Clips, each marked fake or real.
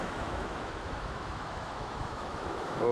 fake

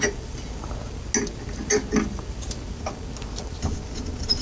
real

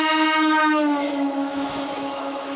fake